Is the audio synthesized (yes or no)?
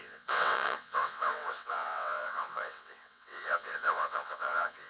yes